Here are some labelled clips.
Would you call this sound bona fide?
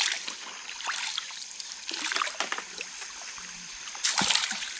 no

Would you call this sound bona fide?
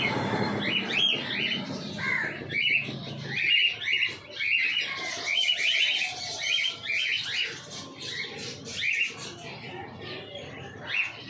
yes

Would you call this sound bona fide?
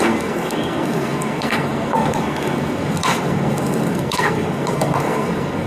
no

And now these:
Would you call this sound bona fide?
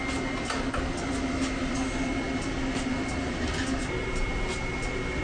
yes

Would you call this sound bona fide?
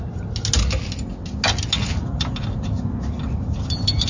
yes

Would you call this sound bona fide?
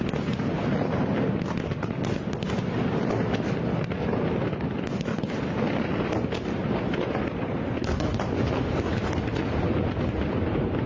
yes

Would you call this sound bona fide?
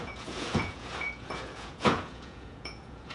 no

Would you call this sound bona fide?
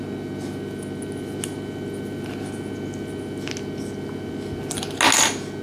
yes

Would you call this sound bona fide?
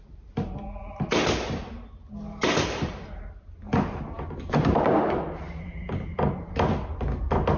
yes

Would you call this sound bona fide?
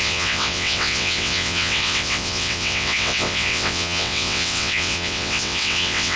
no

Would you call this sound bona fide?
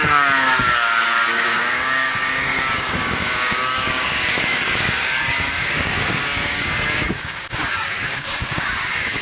no